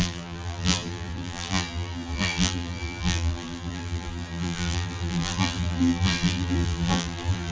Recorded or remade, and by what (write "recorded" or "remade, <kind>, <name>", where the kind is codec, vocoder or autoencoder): remade, vocoder, BigVGAN v2